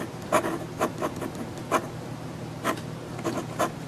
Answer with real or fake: real